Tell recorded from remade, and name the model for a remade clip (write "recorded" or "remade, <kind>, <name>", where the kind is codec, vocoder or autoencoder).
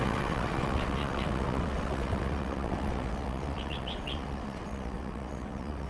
remade, vocoder, WaveNeXt